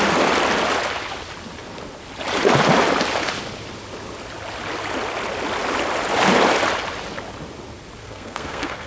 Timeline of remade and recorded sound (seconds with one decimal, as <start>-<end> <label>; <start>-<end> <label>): 0.0-8.0 recorded; 8.0-8.9 remade

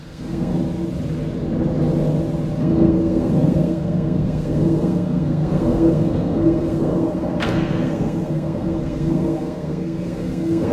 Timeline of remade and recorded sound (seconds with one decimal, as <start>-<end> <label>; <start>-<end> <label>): 0.0-0.5 remade; 0.5-2.6 recorded; 2.6-10.7 remade

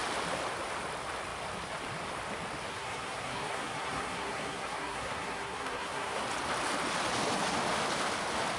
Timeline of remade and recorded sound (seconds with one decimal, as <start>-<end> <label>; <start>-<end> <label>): 0.0-2.7 recorded; 2.7-6.2 remade; 6.2-8.6 recorded

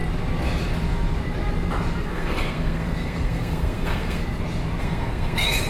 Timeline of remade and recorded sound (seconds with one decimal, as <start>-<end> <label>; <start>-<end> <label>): 0.0-2.0 recorded; 2.0-4.2 remade; 4.2-4.8 recorded; 4.8-5.7 remade

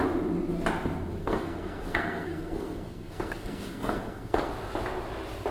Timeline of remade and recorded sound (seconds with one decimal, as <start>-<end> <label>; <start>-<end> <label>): 0.0-1.2 recorded; 1.2-4.5 remade; 4.5-5.5 recorded

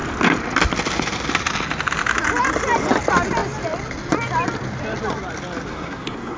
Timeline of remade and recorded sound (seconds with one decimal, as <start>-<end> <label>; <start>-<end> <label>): 0.0-5.7 recorded; 5.7-6.4 remade

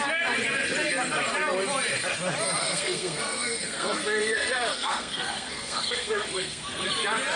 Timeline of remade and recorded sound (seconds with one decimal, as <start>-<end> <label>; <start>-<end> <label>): 0.0-2.6 recorded; 2.6-6.9 remade; 6.9-7.4 recorded

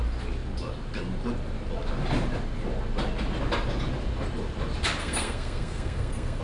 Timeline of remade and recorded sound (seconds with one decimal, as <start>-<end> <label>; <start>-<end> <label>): 0.0-5.0 recorded; 5.0-6.4 remade